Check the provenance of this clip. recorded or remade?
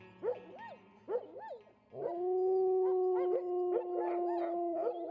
recorded